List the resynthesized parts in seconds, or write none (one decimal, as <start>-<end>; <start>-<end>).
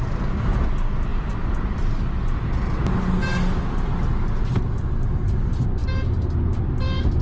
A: none